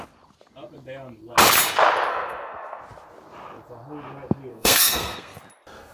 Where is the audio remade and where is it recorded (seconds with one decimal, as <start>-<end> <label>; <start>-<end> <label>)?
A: 0.0-2.1 recorded; 2.1-2.8 remade; 2.8-4.5 recorded; 4.5-5.4 remade; 5.4-5.9 recorded